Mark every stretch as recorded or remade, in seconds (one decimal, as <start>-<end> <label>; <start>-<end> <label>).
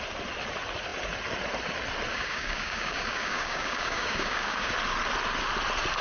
0.0-2.1 recorded; 2.1-4.7 remade; 4.7-6.0 recorded